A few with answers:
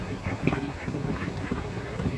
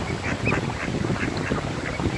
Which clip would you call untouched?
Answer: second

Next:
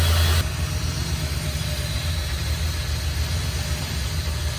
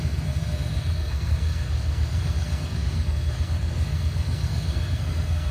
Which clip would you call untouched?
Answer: first